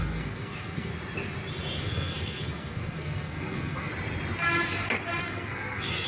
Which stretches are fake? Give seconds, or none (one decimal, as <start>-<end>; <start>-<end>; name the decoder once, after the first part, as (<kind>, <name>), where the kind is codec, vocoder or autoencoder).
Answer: 0.0-0.9 (codec, SNAC); 1.8-3.9; 5.2-6.1